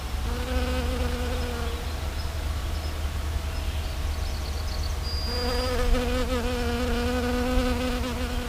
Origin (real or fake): real